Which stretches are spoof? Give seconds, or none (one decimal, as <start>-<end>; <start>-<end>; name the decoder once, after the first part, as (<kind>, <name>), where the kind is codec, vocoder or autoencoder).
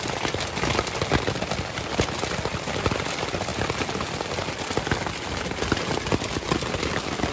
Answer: none